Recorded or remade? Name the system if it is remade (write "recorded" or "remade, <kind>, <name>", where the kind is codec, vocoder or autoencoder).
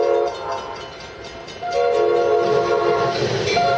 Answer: recorded